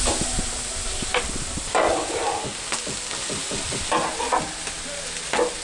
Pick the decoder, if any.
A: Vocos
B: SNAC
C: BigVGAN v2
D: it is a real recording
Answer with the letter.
D